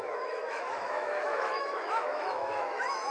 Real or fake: fake